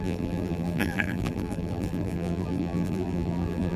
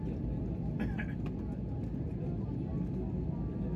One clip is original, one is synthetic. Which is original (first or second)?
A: second